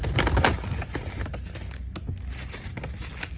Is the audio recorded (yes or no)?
yes